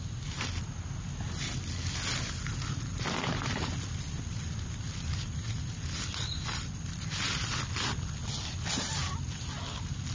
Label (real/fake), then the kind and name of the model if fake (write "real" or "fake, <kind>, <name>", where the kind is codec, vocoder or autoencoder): real